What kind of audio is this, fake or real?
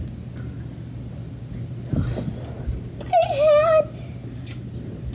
real